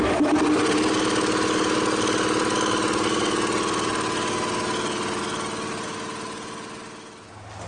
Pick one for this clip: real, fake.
real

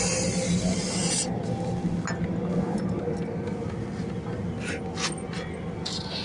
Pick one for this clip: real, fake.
real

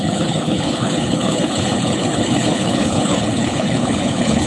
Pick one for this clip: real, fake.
fake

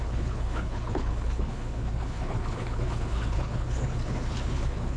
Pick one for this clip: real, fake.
fake